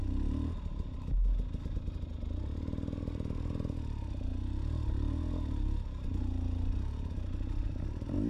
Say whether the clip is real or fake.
real